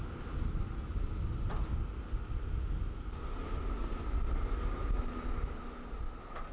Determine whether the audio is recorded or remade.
recorded